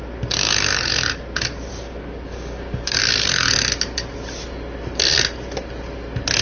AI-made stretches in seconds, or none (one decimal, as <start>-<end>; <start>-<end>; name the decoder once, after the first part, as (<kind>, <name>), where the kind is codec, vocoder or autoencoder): 1.7-3.0 (codec, DAC)